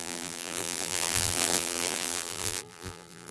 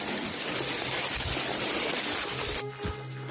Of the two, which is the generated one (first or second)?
first